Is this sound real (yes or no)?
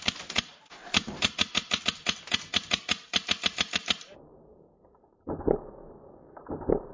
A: no